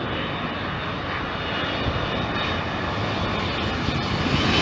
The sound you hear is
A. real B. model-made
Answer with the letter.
A